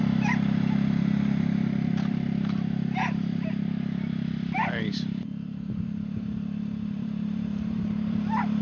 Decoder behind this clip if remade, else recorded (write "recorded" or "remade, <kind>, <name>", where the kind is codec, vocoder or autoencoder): remade, vocoder, BigVGAN v2